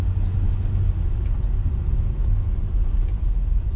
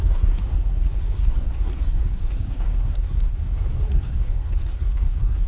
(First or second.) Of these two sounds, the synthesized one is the second